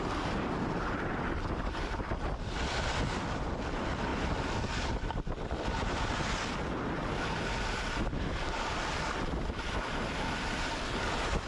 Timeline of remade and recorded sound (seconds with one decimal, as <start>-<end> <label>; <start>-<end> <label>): 0.0-11.5 recorded